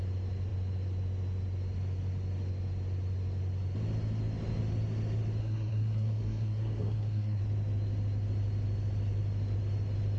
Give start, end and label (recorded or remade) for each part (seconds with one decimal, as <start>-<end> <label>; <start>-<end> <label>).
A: 0.0-5.4 recorded; 5.4-7.4 remade; 7.4-10.2 recorded